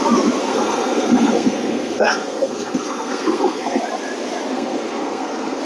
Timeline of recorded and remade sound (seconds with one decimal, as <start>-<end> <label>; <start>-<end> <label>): 0.0-0.4 recorded; 0.4-3.8 remade; 3.8-4.5 recorded; 4.5-5.6 remade